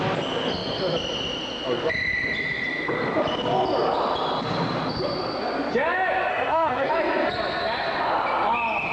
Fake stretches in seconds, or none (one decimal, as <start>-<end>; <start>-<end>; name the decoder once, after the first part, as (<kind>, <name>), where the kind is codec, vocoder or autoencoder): 6.3-6.9 (codec, SNAC)